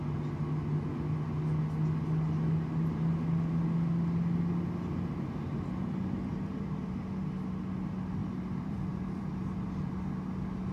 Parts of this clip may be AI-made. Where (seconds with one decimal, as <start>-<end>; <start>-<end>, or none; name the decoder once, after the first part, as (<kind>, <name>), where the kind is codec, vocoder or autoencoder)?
6.3-7.2 (vocoder, BigVGAN v2); 8.2-9.9